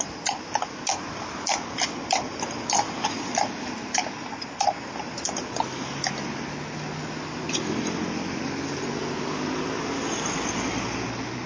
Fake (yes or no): no